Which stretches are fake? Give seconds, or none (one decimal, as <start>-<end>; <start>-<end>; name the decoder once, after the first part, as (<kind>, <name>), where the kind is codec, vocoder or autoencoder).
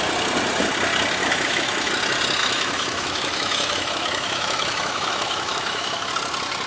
1.2-1.9 (autoencoder, DAC-VAE); 2.4-6.1